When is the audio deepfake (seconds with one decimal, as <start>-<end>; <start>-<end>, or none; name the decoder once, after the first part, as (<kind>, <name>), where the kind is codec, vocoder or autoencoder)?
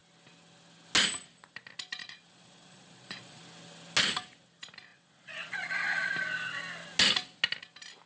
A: 2.0-3.4 (vocoder, Vocos); 4.9-6.1